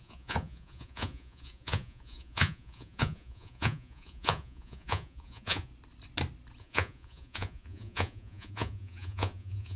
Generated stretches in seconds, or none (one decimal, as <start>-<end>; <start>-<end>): 0.0-5.7; 6.6-9.8